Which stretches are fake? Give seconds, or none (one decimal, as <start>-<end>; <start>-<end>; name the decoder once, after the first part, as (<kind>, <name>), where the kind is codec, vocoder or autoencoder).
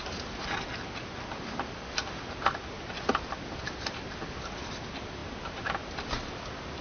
none